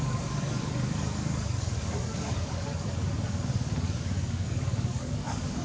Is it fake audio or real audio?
fake